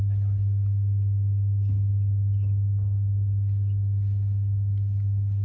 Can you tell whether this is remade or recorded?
recorded